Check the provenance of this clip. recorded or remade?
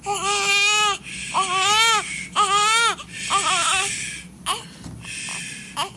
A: recorded